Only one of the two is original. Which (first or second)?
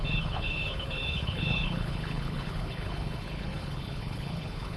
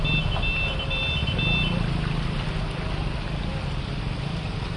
second